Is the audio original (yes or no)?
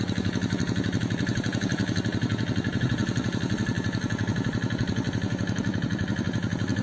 yes